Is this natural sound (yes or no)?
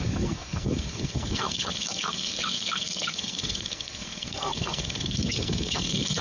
no